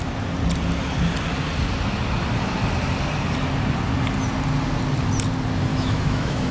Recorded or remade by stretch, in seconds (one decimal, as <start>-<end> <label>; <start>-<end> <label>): 0.0-5.7 recorded; 5.7-6.5 remade